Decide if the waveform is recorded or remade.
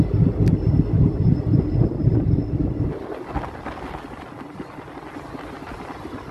recorded